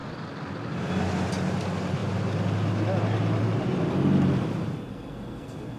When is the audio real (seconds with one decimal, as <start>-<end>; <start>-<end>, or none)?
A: 0.0-4.9